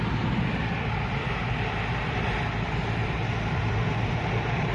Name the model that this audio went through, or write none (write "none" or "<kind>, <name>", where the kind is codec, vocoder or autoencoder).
none